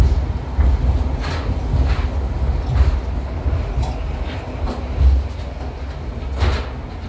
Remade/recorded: recorded